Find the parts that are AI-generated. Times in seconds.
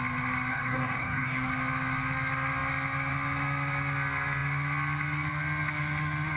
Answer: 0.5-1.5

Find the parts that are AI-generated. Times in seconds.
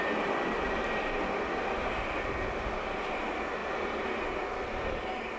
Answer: 3.6-4.2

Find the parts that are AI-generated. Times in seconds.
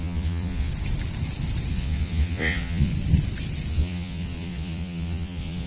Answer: 0.0-0.7; 1.7-2.9; 3.7-5.7